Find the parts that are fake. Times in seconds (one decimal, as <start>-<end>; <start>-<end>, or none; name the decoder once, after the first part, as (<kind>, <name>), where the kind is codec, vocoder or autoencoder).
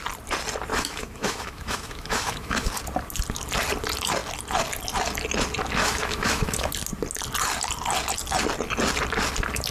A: 0.7-2.7 (autoencoder, DAC-VAE); 5.8-6.7